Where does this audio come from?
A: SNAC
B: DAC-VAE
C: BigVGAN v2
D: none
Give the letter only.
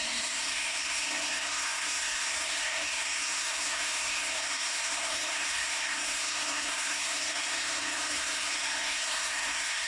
A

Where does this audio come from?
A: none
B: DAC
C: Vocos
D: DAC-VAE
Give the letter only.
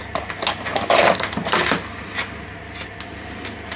A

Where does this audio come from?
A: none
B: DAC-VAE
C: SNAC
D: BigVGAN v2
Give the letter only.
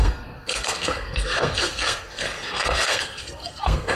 C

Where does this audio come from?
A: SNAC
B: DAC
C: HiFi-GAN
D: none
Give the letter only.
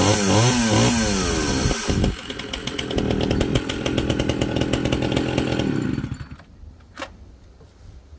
D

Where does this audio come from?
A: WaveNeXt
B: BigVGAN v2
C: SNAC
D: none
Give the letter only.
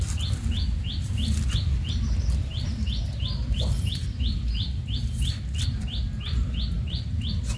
D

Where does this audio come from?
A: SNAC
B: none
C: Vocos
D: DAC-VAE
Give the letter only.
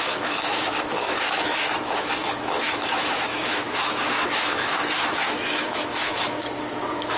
D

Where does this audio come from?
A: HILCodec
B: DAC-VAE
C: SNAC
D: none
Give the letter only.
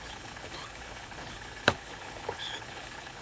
A